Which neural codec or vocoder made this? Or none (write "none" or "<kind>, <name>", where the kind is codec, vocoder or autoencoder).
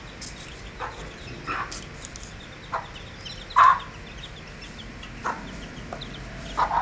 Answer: none